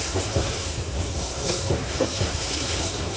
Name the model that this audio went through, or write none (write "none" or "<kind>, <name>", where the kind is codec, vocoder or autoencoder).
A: codec, SNAC